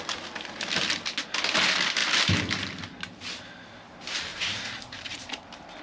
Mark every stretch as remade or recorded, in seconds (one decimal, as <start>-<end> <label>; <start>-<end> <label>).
0.0-4.3 recorded; 4.3-5.3 remade; 5.3-5.8 recorded